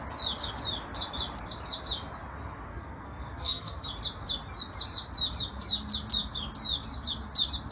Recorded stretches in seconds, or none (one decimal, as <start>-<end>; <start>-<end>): 0.0-2.7; 3.9-7.7